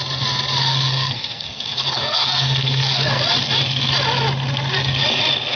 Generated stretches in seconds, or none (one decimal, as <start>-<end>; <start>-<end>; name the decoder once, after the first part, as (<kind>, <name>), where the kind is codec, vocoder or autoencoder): 0.7-3.2 (codec, SNAC)